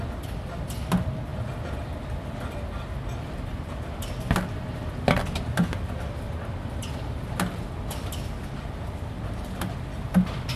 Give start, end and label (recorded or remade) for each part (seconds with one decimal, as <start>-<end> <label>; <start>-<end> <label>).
0.0-10.6 recorded